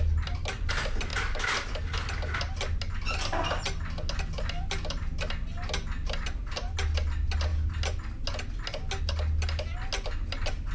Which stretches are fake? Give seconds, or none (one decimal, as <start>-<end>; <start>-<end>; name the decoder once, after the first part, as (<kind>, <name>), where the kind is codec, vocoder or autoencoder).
none